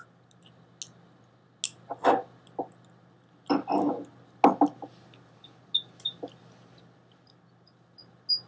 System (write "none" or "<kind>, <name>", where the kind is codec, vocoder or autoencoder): none